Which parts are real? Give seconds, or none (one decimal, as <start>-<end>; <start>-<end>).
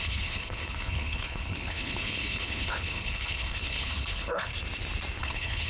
4.5-5.2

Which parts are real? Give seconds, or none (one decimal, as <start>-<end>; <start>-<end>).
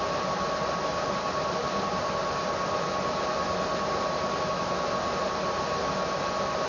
0.0-6.7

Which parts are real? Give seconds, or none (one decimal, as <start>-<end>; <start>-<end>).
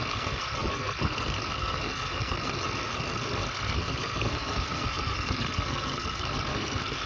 none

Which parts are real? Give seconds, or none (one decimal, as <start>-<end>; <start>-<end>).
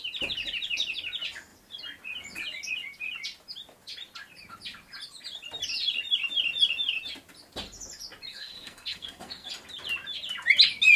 0.0-8.3; 9.5-11.0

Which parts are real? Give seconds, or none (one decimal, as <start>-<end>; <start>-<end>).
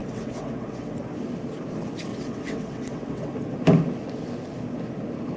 1.0-2.1; 3.3-5.4